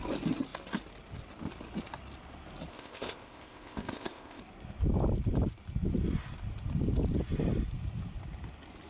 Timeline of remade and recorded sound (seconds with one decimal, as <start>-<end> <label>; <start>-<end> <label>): 0.0-2.7 recorded; 2.7-4.4 remade; 4.4-8.9 recorded